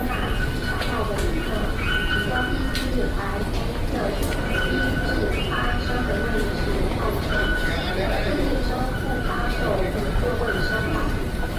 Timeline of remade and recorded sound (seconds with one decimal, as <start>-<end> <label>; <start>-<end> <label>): 0.0-6.4 recorded; 6.4-11.6 remade